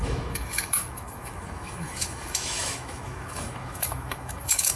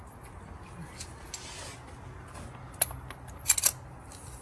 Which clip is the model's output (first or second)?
first